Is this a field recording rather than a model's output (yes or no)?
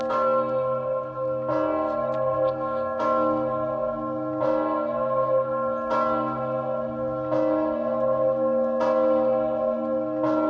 yes